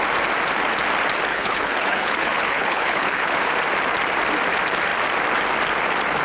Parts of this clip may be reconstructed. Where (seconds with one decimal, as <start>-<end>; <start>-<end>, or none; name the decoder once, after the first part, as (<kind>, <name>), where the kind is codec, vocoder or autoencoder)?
1.3-3.4 (codec, HILCodec)